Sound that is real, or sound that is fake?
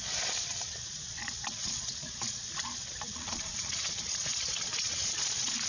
fake